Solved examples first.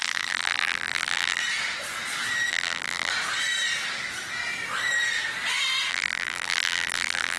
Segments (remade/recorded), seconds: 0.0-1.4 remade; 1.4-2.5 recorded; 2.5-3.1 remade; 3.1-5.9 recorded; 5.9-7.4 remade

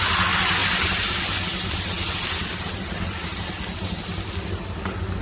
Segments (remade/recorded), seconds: 0.0-5.2 recorded

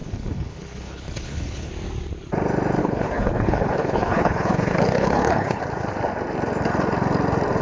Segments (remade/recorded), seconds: 0.0-1.7 remade; 1.7-2.8 recorded; 2.8-5.6 remade; 5.6-7.6 recorded

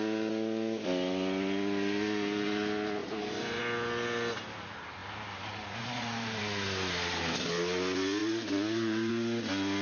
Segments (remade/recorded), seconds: 0.0-3.0 recorded; 3.0-3.6 remade; 3.6-5.0 recorded; 5.0-6.4 remade; 6.4-8.2 recorded; 8.2-9.1 remade; 9.1-9.8 recorded

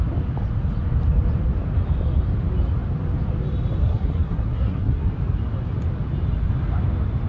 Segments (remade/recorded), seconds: 0.0-3.8 recorded; 3.8-5.1 remade; 5.1-7.3 recorded